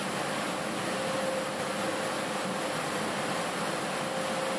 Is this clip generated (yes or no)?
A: no